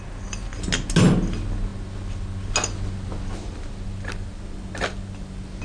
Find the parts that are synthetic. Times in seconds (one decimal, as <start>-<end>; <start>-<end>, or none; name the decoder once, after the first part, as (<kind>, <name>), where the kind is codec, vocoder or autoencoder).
none